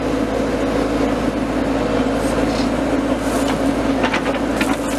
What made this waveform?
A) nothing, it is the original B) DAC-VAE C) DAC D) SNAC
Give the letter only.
A